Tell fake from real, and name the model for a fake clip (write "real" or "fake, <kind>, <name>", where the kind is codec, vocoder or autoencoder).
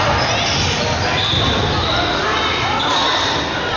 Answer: real